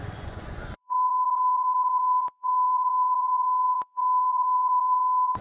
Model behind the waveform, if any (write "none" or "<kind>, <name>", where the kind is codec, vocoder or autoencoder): vocoder, Vocos